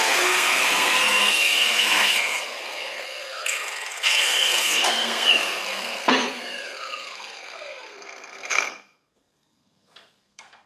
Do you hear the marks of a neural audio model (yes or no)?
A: yes